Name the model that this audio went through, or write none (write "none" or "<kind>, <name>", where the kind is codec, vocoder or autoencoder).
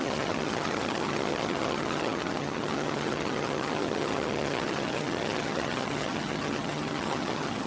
vocoder, HiFi-GAN